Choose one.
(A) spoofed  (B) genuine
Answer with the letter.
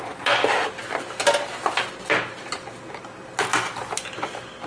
B